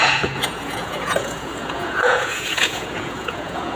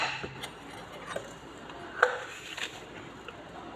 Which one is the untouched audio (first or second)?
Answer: second